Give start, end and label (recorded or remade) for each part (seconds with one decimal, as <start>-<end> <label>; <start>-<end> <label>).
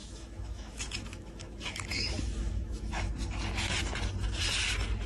0.0-3.1 remade; 3.1-5.1 recorded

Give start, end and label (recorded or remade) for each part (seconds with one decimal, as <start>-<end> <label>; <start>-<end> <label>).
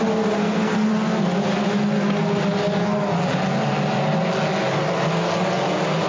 0.0-0.4 recorded; 0.4-0.9 remade; 0.9-6.1 recorded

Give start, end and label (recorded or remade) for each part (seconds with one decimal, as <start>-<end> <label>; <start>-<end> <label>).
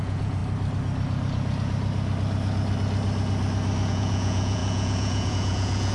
0.0-0.4 remade; 0.4-3.9 recorded; 3.9-5.9 remade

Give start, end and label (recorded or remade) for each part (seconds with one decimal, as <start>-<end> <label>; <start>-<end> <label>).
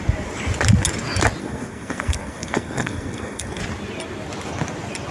0.0-1.4 recorded; 1.4-3.6 remade; 3.6-5.1 recorded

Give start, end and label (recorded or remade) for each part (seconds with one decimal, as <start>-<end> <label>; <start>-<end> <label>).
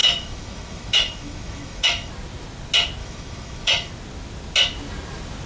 0.0-2.1 remade; 2.1-3.0 recorded; 3.0-3.9 remade; 3.9-5.5 recorded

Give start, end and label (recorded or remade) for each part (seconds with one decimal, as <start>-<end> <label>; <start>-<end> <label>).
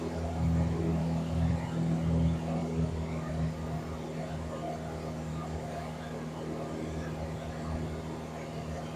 0.0-1.0 recorded; 1.0-1.5 remade; 1.5-2.6 recorded; 2.6-3.3 remade; 3.3-5.3 recorded; 5.3-6.0 remade; 6.0-9.0 recorded